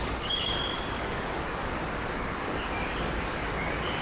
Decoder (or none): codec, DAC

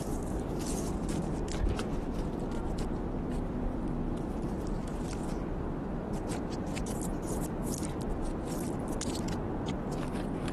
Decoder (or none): none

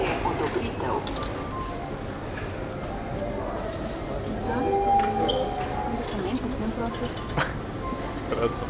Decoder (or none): none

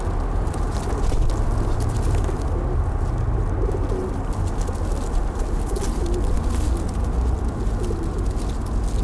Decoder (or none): none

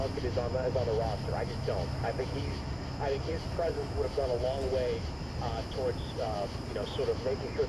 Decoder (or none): none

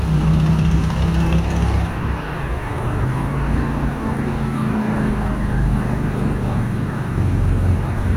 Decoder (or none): codec, DAC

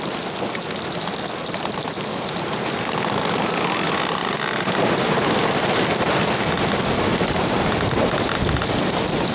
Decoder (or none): none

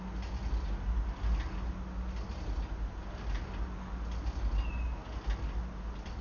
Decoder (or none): none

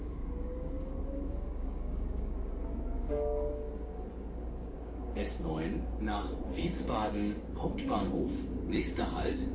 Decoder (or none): codec, DAC